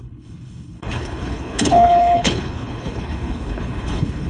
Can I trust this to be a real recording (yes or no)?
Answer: no